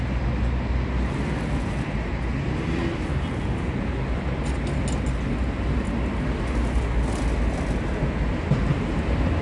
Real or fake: real